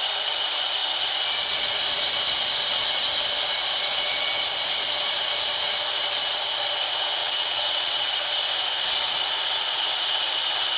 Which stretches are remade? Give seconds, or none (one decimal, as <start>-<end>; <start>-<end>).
7.2-8.1